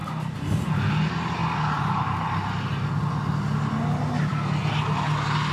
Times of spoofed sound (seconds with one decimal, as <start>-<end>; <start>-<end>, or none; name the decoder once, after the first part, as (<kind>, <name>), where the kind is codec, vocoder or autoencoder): none